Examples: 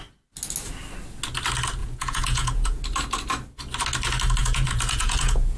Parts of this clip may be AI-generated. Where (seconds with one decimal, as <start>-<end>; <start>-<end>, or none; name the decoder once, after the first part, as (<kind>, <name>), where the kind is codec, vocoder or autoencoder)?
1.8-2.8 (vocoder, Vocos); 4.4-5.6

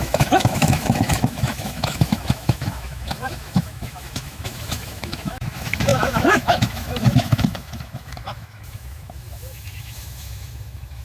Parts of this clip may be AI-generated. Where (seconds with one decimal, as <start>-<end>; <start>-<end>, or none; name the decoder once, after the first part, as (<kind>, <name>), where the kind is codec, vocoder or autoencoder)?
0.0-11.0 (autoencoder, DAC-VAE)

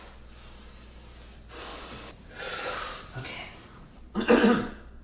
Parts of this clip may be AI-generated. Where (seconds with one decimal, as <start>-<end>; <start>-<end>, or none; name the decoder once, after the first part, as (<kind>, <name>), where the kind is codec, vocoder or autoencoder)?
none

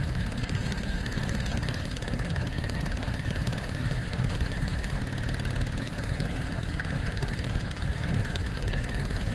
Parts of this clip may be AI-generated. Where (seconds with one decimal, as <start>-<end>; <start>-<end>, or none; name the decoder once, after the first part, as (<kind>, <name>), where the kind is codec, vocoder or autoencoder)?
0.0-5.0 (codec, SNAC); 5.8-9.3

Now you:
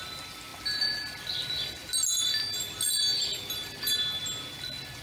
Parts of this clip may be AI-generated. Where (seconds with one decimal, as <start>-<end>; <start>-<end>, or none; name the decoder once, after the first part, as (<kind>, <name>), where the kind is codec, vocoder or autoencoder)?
none

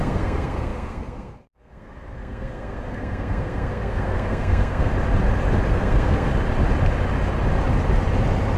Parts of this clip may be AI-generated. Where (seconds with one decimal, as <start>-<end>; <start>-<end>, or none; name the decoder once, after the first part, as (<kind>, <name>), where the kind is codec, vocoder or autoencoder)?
0.0-4.9 (codec, SNAC); 5.7-6.3